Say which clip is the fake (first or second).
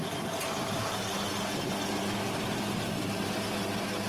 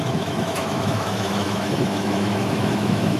second